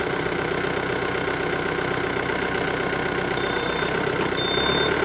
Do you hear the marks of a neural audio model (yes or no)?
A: no